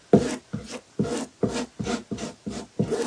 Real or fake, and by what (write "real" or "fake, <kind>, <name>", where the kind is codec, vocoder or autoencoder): real